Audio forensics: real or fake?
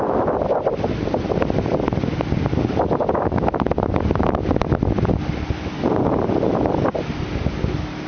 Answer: real